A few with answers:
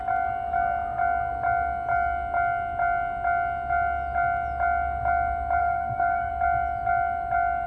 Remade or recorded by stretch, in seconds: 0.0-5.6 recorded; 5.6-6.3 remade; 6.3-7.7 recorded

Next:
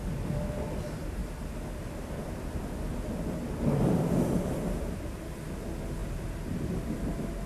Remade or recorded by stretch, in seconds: 0.0-7.5 recorded

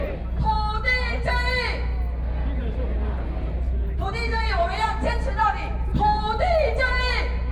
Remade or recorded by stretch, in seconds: 0.0-2.6 recorded; 2.6-4.1 remade; 4.1-5.9 recorded; 5.9-6.5 remade; 6.5-7.5 recorded

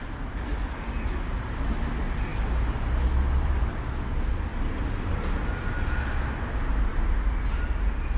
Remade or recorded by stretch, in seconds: 0.0-8.2 recorded